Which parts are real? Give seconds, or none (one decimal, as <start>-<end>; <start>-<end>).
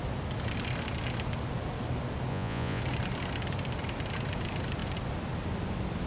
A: 0.0-2.3; 2.8-6.1